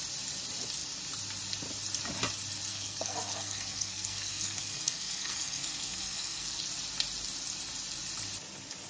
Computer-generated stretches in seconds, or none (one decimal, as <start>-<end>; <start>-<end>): 2.7-6.6